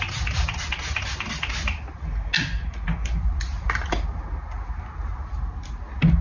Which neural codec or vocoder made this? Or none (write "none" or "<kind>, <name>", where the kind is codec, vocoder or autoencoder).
none